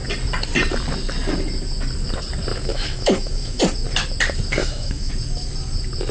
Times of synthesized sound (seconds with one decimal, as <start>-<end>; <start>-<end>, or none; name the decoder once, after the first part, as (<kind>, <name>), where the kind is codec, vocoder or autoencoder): 2.5-3.6 (autoencoder, DAC-VAE); 4.6-5.1